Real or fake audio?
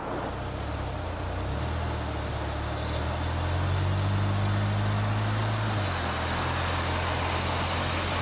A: real